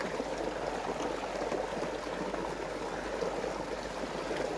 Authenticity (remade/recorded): recorded